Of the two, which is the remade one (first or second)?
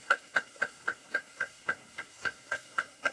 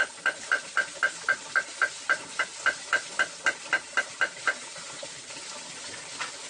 first